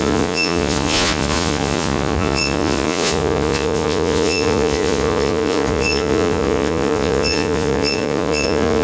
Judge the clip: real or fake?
fake